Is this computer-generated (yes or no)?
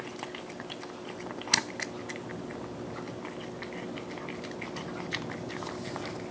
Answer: no